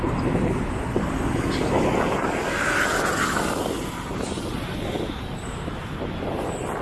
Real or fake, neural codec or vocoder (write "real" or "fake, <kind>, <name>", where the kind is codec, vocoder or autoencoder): real